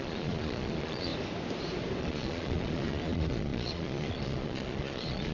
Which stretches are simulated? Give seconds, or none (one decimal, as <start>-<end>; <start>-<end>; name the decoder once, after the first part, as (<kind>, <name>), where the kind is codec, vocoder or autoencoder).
0.0-1.1 (vocoder, Vocos); 2.0-5.3